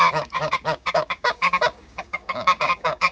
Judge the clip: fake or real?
fake